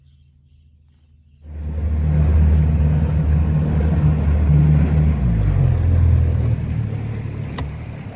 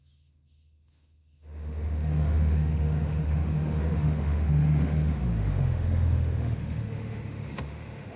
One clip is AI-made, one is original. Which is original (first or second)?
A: first